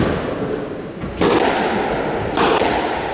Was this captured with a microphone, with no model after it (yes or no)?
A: yes